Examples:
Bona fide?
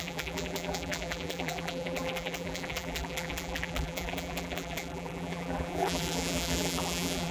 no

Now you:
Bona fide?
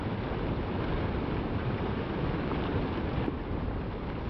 yes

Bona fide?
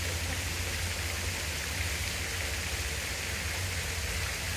yes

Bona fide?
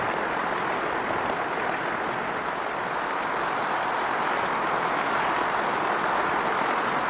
yes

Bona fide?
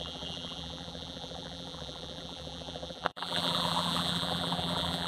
no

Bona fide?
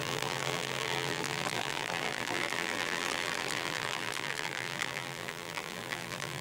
no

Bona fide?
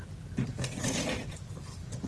yes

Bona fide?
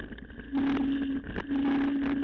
yes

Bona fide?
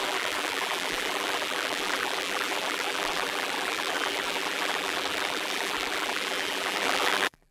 no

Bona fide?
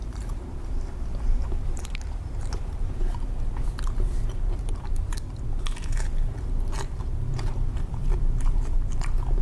no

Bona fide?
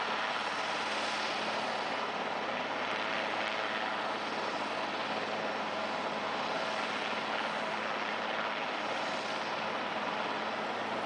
yes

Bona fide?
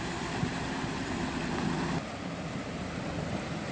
no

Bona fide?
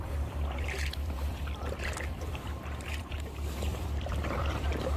no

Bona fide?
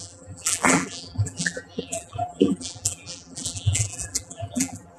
no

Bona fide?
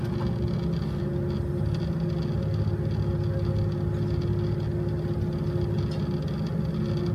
yes